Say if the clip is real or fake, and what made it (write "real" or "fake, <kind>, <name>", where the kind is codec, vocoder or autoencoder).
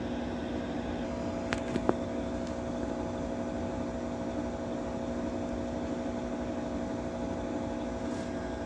real